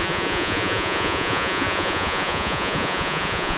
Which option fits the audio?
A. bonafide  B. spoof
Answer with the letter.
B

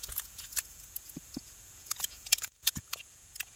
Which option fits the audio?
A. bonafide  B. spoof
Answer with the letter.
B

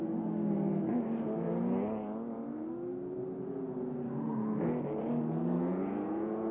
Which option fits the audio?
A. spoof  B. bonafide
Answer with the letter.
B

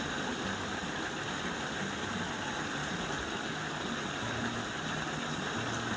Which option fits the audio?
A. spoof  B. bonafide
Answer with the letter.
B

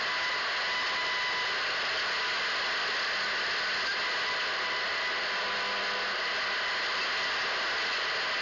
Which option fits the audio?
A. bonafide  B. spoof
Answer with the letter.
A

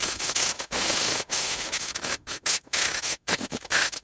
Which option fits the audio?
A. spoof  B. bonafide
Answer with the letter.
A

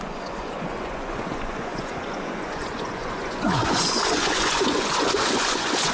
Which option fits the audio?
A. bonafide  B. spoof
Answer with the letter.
B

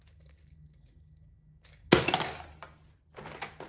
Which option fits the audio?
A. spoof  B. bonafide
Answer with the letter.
B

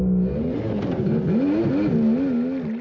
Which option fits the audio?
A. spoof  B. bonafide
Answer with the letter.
B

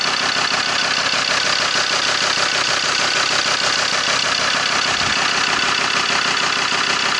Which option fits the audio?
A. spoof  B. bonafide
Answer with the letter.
B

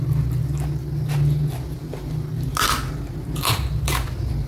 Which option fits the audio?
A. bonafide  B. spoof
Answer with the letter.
A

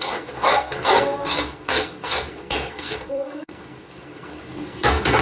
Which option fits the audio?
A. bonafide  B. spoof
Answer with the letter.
B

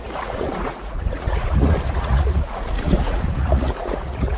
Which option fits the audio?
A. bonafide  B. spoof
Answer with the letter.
B